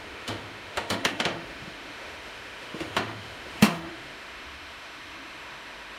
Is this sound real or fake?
fake